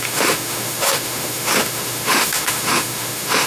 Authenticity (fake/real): fake